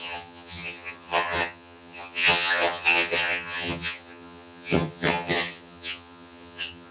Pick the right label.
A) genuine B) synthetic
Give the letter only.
B